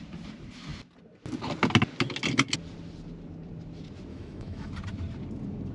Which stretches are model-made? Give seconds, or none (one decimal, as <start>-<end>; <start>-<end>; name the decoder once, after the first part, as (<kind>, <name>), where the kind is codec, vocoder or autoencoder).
4.1-4.7 (autoencoder, DAC-VAE)